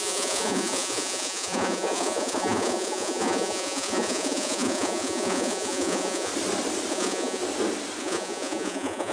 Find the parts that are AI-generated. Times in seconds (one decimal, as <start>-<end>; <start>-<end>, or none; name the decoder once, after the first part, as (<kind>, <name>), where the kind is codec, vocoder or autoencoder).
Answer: 0.0-6.3 (vocoder, Vocos); 6.9-7.4; 8.0-9.1